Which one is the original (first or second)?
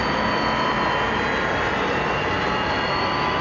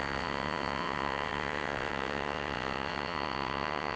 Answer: first